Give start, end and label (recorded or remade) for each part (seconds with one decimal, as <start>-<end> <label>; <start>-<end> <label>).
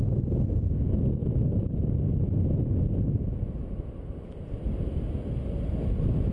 0.0-6.3 recorded